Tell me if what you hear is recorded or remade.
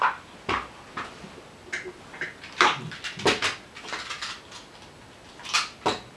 recorded